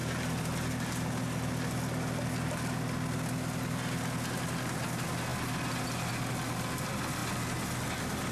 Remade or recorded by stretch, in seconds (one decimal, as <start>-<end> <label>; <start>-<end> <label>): 0.0-8.3 recorded